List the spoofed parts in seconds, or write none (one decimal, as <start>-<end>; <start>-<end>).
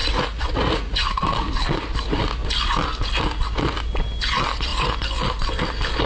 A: 0.0-1.2